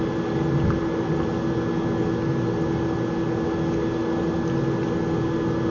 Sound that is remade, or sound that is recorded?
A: recorded